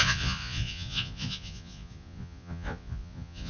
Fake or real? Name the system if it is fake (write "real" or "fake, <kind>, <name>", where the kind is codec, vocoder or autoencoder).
fake, vocoder, Vocos